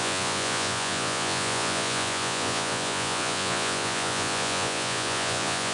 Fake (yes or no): yes